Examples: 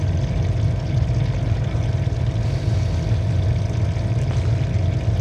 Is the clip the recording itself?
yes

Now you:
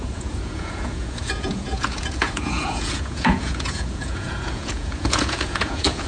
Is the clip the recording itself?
no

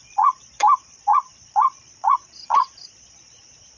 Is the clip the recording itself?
no